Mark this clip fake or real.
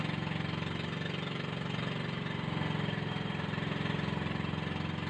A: real